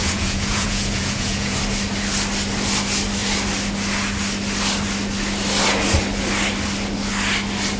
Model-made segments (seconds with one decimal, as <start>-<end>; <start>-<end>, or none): 0.0-1.6